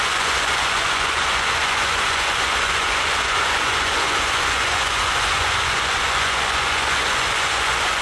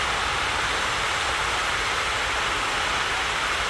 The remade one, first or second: first